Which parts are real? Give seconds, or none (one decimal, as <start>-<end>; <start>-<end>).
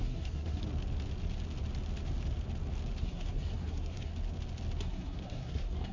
0.6-3.0; 4.1-4.8